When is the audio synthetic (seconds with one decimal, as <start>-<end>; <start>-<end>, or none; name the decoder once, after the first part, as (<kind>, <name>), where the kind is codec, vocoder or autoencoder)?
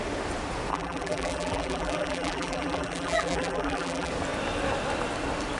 0.7-4.1 (vocoder, BigVGAN v2)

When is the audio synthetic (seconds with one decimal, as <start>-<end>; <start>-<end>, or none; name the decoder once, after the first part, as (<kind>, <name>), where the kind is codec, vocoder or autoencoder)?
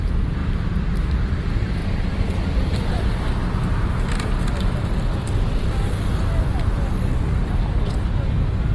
1.8-3.0 (vocoder, BigVGAN v2)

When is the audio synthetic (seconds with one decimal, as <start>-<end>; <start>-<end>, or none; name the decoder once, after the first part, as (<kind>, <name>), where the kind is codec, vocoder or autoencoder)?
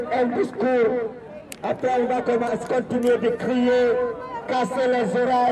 1.4-2.2 (vocoder, BigVGAN v2)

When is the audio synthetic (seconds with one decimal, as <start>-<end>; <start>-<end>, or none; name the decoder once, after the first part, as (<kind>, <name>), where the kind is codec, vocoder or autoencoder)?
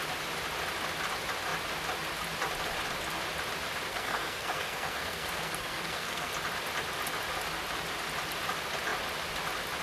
3.9-6.3 (codec, SNAC)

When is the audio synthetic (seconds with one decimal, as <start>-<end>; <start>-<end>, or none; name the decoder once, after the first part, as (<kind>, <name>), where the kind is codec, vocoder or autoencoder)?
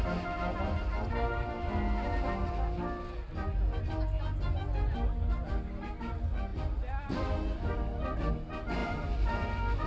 6.5-8.3 (vocoder, BigVGAN v2); 8.8-9.9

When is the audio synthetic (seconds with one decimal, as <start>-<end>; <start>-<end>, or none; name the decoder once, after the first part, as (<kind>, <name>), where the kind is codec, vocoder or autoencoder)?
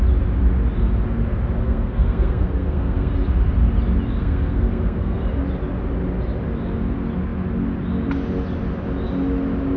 1.6-3.1 (codec, SNAC); 4.2-5.2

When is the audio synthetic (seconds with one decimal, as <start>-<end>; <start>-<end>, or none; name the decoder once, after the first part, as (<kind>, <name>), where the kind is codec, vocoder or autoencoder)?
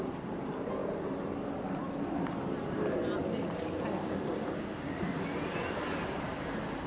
none